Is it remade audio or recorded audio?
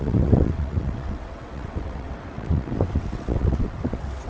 remade